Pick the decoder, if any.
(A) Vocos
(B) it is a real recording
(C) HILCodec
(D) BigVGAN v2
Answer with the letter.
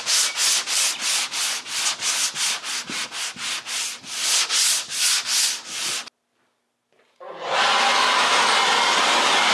B